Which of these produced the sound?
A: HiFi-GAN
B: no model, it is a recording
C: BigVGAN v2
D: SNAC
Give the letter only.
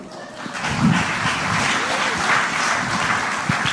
B